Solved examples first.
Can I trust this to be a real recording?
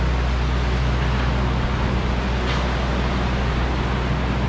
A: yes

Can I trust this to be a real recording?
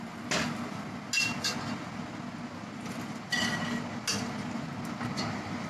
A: yes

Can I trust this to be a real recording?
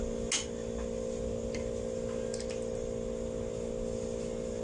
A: yes